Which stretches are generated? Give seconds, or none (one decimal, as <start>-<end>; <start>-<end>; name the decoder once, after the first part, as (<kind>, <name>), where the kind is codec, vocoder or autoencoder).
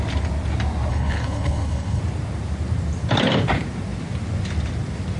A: 0.9-2.0 (codec, HILCodec)